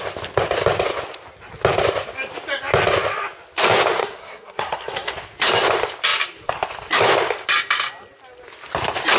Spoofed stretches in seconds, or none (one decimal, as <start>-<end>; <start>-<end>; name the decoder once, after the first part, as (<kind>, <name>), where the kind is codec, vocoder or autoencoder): 4.0-5.1 (codec, SNAC)